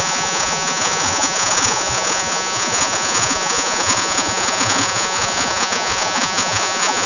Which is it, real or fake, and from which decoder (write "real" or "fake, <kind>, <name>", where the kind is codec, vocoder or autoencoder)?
fake, vocoder, Vocos